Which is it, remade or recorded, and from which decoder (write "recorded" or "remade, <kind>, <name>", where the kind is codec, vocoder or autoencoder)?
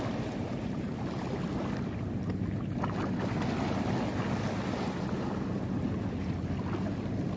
recorded